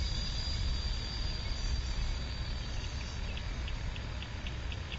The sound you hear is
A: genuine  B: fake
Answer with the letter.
A